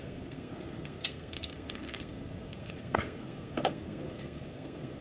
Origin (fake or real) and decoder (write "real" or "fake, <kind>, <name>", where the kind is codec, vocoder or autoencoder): fake, codec, SNAC